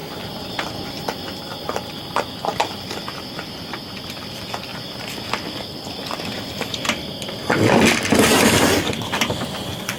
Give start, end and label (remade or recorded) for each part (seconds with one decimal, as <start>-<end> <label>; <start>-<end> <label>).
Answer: 0.0-10.0 recorded